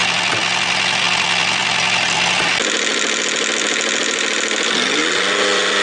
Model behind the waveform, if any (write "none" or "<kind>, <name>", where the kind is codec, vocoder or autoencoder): none